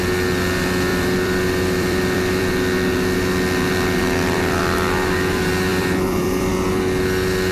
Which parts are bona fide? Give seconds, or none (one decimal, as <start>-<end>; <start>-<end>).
0.0-0.9; 2.5-4.0; 4.6-5.7; 6.5-7.5